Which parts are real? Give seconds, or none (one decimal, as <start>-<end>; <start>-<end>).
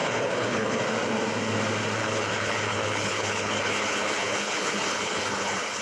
0.8-2.0